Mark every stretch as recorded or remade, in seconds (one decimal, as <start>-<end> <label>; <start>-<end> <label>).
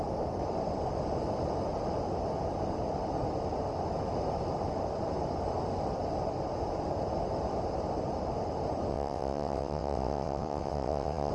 0.0-8.9 recorded; 8.9-11.3 remade